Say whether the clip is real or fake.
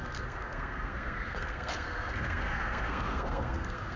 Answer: fake